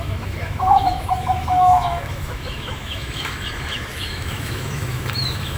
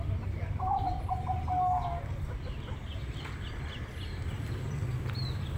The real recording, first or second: second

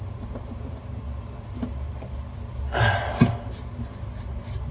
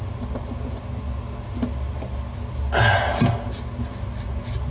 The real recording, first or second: second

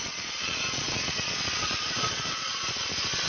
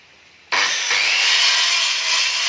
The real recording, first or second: second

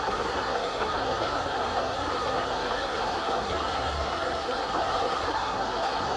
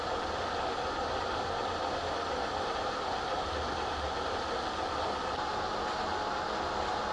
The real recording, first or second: second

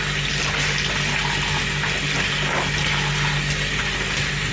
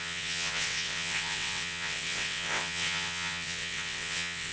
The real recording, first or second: first